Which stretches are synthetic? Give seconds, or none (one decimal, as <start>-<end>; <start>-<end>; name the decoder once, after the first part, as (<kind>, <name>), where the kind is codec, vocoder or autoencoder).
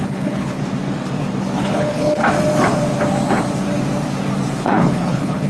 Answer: 0.0-0.6 (codec, HILCodec); 1.6-2.2; 4.6-5.5